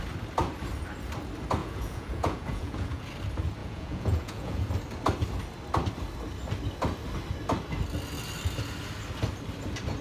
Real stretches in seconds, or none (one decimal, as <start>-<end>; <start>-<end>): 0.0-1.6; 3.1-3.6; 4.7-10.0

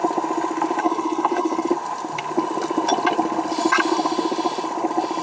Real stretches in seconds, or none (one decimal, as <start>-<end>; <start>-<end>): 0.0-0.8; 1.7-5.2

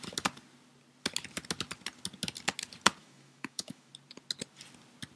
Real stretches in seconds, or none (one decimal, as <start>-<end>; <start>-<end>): 0.0-3.0; 3.9-5.2

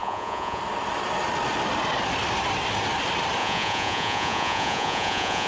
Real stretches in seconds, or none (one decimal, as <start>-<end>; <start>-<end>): 0.6-3.4

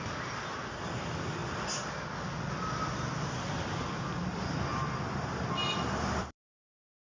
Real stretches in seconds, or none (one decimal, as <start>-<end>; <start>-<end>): 1.4-3.2; 4.7-5.7

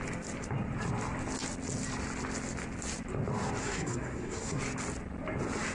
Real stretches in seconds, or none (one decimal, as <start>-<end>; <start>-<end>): 0.0-3.6; 4.6-5.7

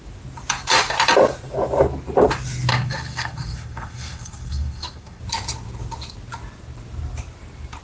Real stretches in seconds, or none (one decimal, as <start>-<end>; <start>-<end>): 0.0-2.7; 5.2-7.8

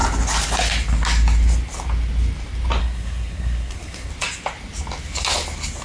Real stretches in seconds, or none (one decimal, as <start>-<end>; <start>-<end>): 0.0-2.8; 4.1-5.8